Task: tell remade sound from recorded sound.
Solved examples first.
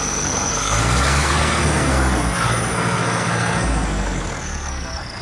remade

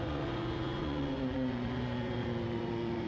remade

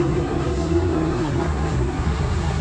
remade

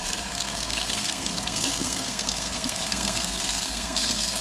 remade